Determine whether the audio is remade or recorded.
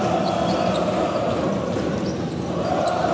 recorded